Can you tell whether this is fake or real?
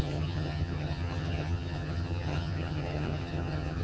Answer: fake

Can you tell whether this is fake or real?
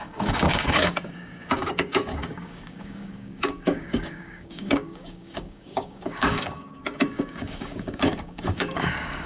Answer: fake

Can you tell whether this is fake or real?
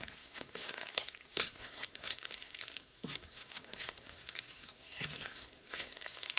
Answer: fake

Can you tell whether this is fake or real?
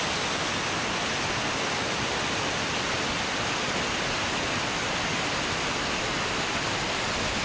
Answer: real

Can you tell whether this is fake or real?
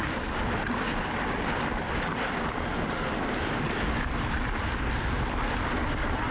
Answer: real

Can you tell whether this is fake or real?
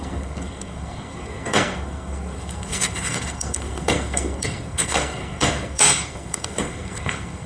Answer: fake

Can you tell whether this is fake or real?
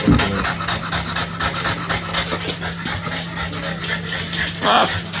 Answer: real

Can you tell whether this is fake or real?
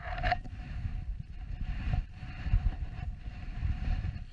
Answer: fake